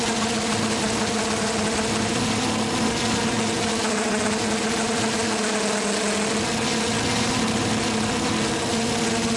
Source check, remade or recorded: recorded